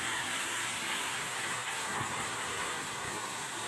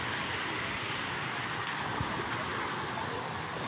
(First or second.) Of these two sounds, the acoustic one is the second